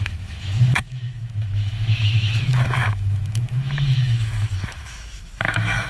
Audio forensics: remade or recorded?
remade